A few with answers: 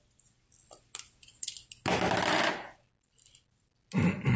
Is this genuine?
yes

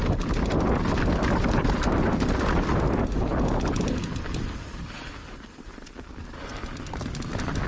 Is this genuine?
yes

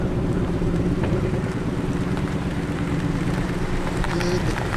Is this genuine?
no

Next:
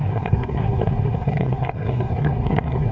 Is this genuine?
no